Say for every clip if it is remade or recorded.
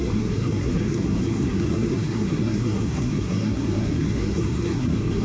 remade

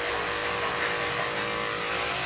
recorded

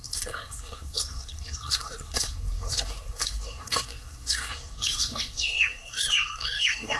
remade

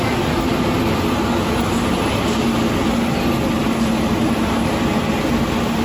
recorded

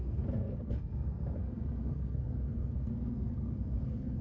remade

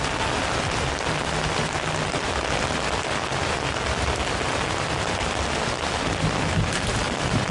recorded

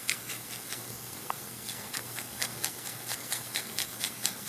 remade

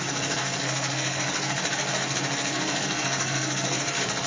remade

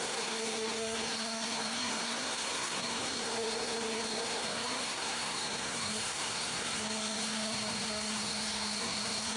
remade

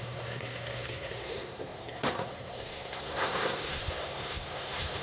remade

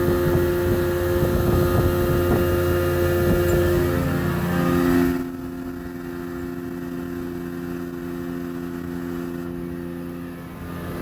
recorded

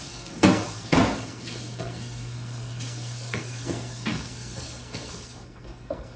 remade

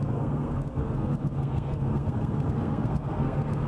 remade